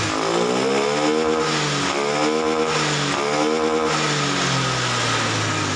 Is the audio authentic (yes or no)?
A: yes